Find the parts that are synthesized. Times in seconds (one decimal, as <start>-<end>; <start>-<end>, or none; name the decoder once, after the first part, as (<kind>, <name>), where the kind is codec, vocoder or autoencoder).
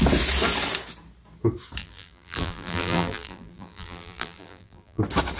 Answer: 1.8-5.0 (vocoder, BigVGAN v2)